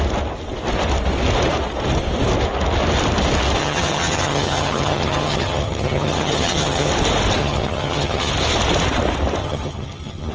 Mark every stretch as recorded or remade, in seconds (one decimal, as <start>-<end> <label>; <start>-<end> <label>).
0.0-3.6 recorded; 3.6-6.9 remade; 6.9-7.4 recorded; 7.4-8.3 remade; 8.3-9.4 recorded; 9.4-10.3 remade